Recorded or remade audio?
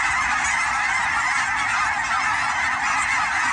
recorded